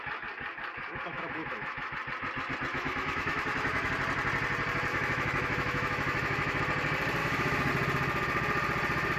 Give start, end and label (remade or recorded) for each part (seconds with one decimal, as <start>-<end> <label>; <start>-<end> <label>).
0.0-1.1 recorded; 1.1-1.9 remade; 1.9-2.7 recorded; 2.7-3.9 remade; 3.9-4.9 recorded; 4.9-6.6 remade; 6.6-7.2 recorded; 7.2-7.7 remade; 7.7-9.2 recorded